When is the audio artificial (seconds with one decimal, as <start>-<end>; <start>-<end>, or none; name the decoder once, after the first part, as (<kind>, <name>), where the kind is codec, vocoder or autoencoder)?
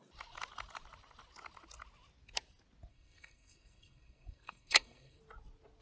2.9-5.2 (codec, SNAC)